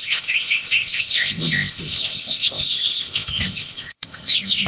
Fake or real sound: fake